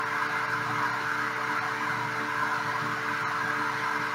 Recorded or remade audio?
recorded